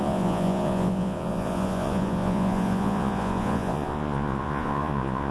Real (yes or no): no